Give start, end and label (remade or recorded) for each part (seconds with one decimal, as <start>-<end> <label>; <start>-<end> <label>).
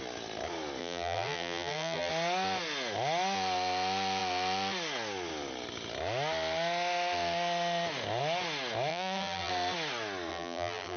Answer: 0.0-0.8 recorded; 0.8-2.1 remade; 2.1-8.9 recorded; 8.9-9.5 remade; 9.5-10.3 recorded; 10.3-11.0 remade